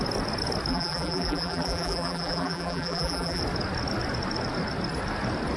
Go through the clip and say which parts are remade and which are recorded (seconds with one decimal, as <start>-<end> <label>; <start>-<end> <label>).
0.0-0.7 recorded; 0.7-3.4 remade; 3.4-5.6 recorded